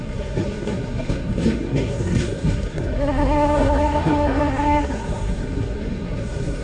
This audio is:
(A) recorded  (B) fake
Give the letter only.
B